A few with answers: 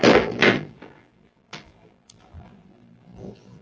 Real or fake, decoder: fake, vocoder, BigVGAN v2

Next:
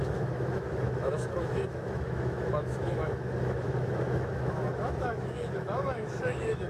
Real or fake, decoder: fake, autoencoder, DAC-VAE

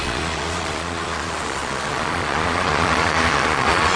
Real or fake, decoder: fake, vocoder, Vocos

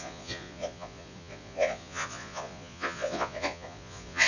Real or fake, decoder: fake, vocoder, Vocos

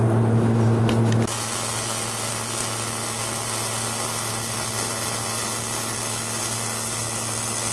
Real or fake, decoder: real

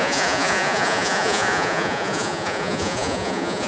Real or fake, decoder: fake, vocoder, Vocos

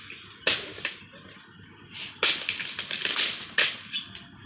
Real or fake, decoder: real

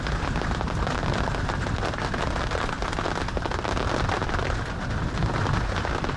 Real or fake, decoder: real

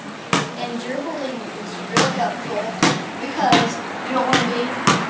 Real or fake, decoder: real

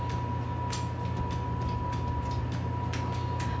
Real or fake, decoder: real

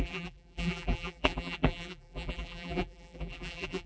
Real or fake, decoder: fake, vocoder, BigVGAN v2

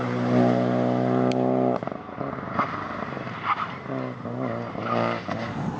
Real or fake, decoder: real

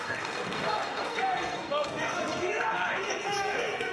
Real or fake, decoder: fake, codec, SNAC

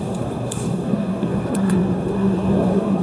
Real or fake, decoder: fake, codec, SNAC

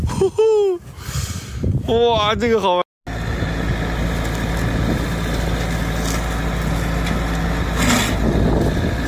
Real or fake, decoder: real